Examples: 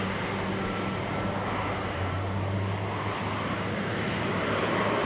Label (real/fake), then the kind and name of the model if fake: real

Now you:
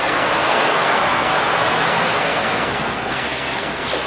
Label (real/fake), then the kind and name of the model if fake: fake, codec, SNAC